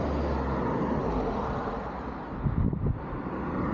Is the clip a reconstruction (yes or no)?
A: no